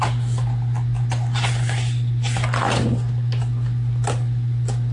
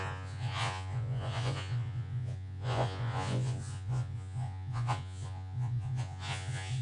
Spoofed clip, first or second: second